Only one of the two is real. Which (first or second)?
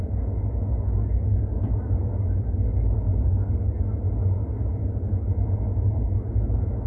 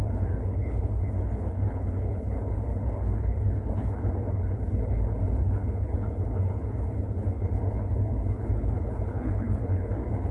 first